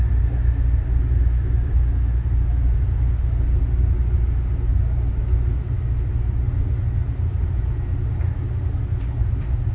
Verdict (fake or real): real